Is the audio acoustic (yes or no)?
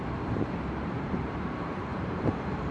no